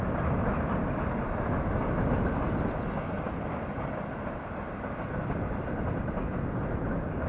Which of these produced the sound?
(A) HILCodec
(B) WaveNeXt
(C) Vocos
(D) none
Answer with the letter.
D